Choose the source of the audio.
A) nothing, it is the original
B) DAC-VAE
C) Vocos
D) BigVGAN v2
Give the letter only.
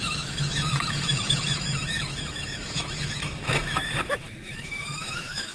B